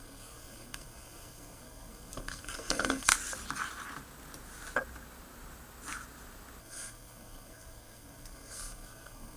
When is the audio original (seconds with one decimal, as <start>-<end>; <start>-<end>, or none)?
3.1-6.6